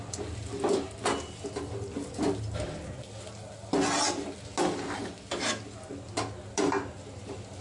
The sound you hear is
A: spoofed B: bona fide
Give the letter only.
B